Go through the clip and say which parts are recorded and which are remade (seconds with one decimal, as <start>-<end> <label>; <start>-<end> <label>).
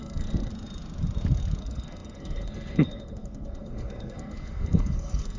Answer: 0.0-0.5 remade; 0.5-1.6 recorded; 1.6-5.4 remade